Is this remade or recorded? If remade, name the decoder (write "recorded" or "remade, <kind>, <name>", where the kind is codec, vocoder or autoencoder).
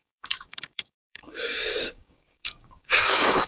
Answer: remade, codec, DAC